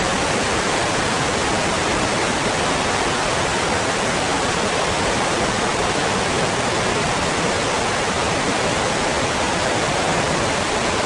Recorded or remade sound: remade